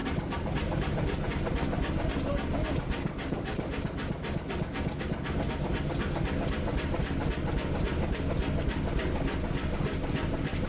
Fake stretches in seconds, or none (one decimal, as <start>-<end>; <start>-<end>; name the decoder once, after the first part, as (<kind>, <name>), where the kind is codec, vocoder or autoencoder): 0.0-1.3 (vocoder, BigVGAN v2)